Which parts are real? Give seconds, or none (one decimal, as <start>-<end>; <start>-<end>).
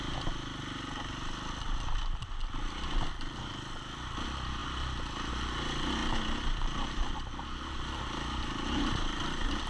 0.0-9.7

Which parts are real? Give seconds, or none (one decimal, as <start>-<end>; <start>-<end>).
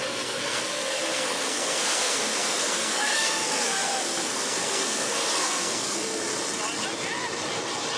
6.2-8.0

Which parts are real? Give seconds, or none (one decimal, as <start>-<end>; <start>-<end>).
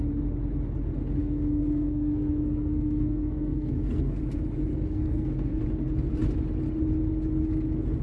0.0-1.2; 4.2-4.7; 5.6-8.0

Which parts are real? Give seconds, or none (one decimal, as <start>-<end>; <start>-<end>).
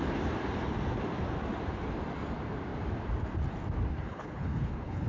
0.0-3.9